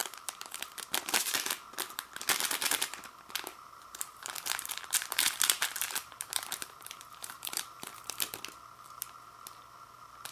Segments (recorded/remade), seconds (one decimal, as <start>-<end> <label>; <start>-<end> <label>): 0.0-0.6 remade; 0.6-3.5 recorded; 3.5-8.1 remade; 8.1-10.3 recorded